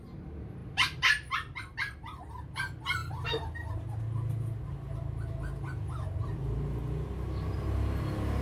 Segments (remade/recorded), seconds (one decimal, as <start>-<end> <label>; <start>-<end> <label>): 0.0-0.6 recorded; 0.6-2.3 remade; 2.3-8.4 recorded